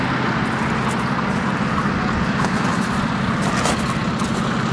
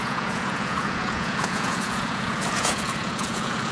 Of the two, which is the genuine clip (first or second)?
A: first